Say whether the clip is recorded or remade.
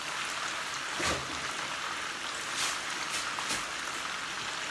recorded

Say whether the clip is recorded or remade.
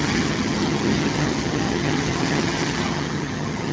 remade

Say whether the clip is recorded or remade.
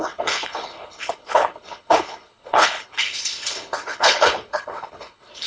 remade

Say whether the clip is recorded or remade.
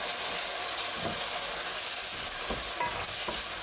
recorded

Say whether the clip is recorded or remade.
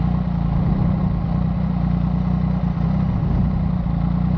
recorded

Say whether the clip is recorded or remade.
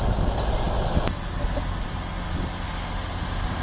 recorded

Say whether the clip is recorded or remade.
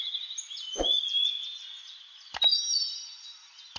recorded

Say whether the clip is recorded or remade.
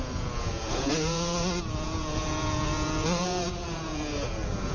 remade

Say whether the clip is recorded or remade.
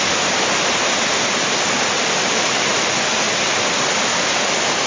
recorded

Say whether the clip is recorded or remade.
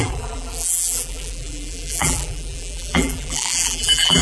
remade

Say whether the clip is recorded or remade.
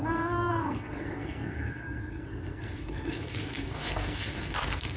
remade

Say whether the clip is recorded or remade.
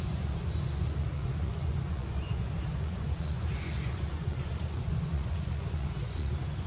remade